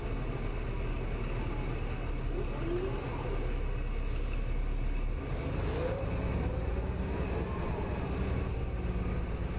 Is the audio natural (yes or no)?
yes